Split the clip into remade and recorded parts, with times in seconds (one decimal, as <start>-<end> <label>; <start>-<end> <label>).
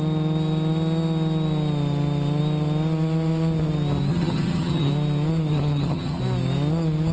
0.0-4.1 recorded; 4.1-4.9 remade; 4.9-5.5 recorded; 5.5-6.2 remade; 6.2-7.1 recorded